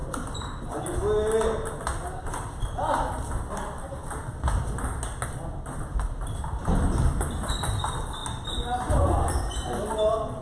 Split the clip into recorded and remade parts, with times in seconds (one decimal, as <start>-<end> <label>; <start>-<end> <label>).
0.0-10.4 recorded